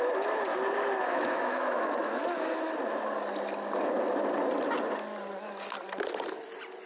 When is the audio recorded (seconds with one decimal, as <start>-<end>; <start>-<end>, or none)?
0.0-1.1; 2.7-6.9